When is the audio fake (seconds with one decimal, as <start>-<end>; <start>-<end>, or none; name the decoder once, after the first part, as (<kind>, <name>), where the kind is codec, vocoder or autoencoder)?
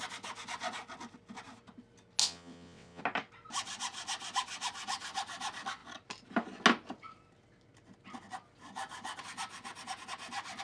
2.2-3.0 (vocoder, WaveNeXt)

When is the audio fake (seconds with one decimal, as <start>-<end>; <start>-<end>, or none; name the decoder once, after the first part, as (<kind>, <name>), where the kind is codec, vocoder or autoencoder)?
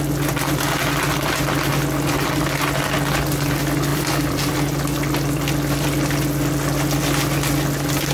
3.9-4.8 (vocoder, BigVGAN v2)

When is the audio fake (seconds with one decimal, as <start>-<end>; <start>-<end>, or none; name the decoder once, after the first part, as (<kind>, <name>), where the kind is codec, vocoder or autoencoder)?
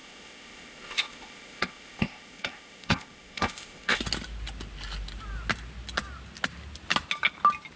0.0-4.0 (codec, ZipCodec)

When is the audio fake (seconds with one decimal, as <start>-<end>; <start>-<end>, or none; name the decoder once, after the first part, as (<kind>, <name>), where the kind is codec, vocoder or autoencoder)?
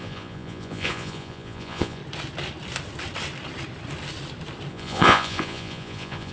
0.0-2.0 (vocoder, Vocos); 4.7-6.3